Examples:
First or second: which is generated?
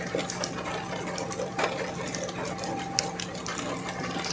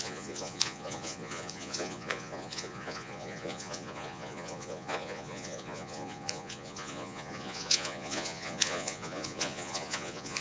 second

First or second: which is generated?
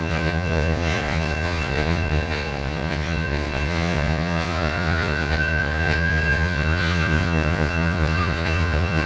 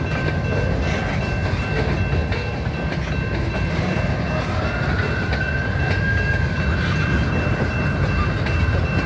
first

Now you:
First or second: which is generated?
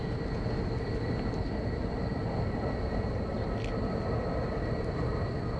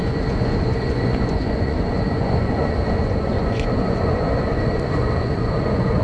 second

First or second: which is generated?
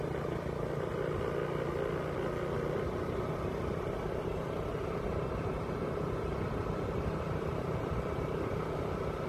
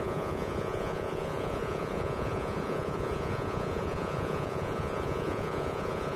second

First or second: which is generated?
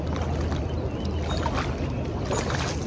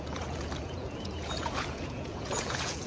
second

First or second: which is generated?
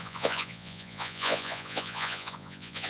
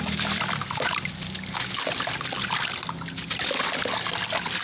first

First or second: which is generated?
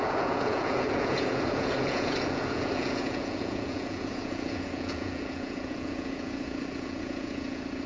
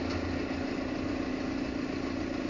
first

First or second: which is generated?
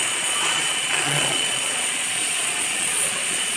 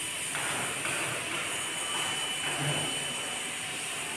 first